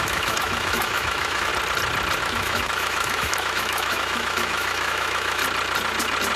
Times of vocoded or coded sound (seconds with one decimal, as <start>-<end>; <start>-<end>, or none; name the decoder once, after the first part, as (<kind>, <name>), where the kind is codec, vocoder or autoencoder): 0.0-1.5 (autoencoder, DAC-VAE); 2.2-5.4